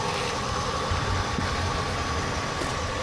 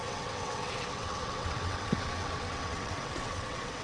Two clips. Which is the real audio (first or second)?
first